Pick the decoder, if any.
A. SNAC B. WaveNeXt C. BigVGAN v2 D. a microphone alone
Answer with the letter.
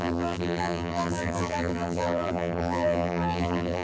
C